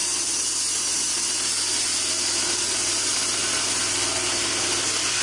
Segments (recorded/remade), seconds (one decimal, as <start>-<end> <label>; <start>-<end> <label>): 0.0-5.2 recorded